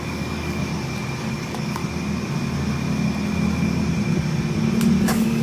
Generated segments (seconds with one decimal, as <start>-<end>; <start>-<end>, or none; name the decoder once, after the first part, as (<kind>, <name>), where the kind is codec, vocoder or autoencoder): 0.0-0.7 (codec, DAC); 1.2-1.8; 5.0-5.4